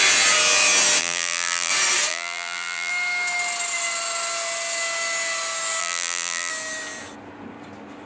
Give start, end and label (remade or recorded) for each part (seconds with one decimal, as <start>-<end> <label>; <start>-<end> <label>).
0.0-1.0 recorded; 1.0-1.7 remade; 1.7-2.1 recorded; 2.1-2.9 remade; 2.9-5.8 recorded; 5.8-6.5 remade; 6.5-8.1 recorded